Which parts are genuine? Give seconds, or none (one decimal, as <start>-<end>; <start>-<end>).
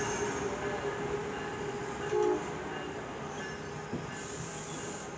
0.0-5.2